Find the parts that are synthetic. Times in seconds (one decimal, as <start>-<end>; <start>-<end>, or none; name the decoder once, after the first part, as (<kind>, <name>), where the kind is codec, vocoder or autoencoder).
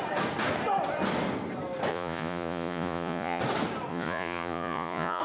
1.9-3.4 (vocoder, Vocos); 3.9-5.2